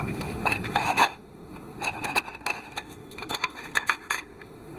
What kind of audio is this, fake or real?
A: fake